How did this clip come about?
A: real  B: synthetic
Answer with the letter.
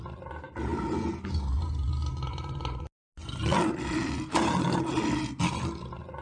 A